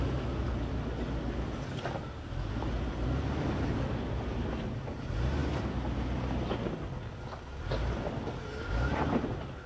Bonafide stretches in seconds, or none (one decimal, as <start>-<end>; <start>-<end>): 0.0-9.7